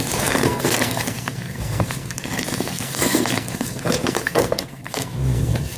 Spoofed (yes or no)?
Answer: yes